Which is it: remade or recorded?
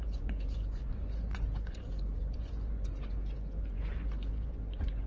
remade